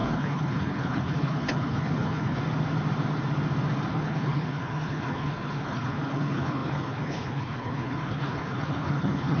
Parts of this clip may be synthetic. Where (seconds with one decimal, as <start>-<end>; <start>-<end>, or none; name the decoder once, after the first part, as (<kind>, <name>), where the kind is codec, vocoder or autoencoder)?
0.0-2.4 (codec, HILCodec); 3.9-9.4